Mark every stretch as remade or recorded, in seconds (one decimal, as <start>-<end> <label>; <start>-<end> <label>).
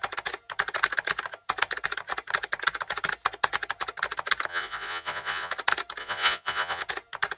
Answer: 0.0-4.5 recorded; 4.5-5.5 remade; 5.5-6.0 recorded; 6.0-6.8 remade; 6.8-7.4 recorded